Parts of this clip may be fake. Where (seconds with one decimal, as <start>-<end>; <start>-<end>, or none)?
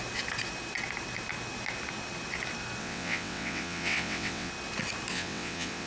2.8-4.5; 5.1-5.9